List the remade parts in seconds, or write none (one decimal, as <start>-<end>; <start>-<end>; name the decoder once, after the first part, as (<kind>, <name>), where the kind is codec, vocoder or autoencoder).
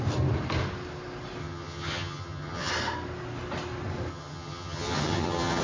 1.4-2.7 (vocoder, HiFi-GAN); 4.1-5.6